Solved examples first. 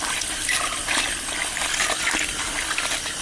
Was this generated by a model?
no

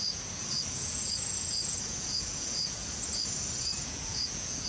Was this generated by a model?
yes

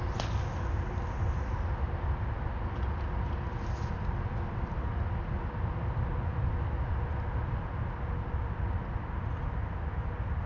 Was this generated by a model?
no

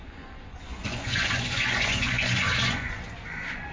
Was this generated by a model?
yes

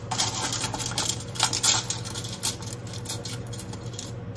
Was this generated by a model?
no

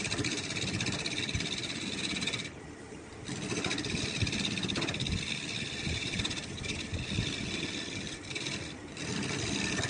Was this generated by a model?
no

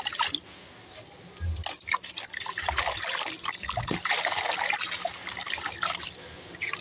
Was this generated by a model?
no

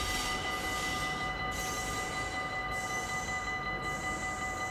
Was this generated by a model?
no